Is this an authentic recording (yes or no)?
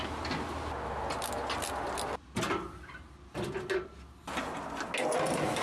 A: yes